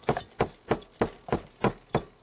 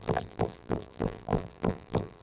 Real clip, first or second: first